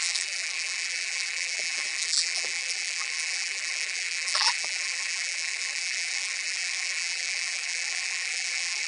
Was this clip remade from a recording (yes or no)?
yes